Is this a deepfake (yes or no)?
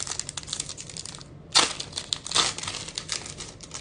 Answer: no